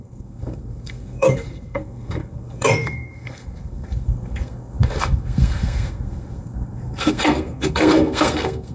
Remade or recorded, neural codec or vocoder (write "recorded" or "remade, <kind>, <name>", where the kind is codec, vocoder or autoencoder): remade, codec, SNAC